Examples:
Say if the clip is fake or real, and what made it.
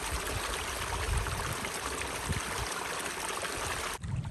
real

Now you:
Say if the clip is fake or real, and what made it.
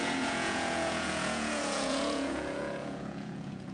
fake, vocoder, Vocos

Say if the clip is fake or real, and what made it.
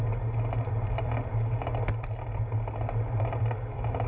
real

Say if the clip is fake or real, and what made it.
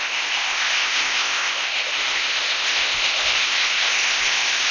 fake, codec, ZipCodec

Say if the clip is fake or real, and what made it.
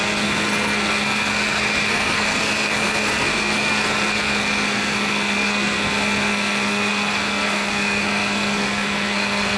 fake, codec, SNAC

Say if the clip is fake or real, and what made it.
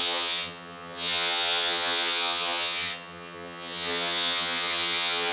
fake, vocoder, HiFi-GAN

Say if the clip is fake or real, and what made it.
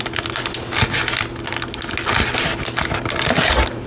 real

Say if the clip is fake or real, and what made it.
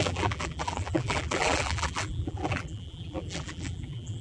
fake, vocoder, BigVGAN v2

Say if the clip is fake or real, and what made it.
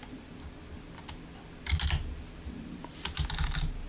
real